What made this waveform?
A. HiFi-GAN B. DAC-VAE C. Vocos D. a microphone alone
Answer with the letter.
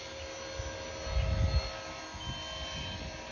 D